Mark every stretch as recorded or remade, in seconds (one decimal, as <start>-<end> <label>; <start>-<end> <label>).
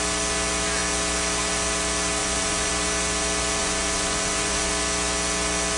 0.0-2.2 recorded; 2.2-2.7 remade; 2.7-3.6 recorded; 3.6-4.7 remade; 4.7-5.8 recorded